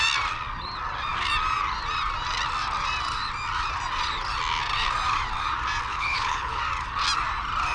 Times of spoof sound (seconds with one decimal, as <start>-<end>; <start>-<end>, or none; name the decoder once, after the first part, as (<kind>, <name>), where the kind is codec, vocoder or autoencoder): 5.9-6.6 (codec, HILCodec)

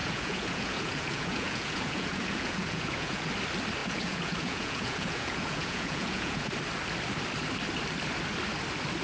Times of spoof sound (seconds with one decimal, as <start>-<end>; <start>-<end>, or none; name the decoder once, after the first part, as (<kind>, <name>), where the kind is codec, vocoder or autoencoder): 0.0-3.3 (vocoder, Vocos); 3.8-6.5